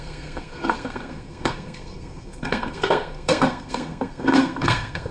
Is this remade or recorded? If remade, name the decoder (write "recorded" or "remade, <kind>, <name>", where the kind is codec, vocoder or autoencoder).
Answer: remade, codec, SNAC